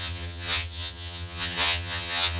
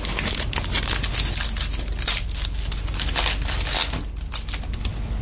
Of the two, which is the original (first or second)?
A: second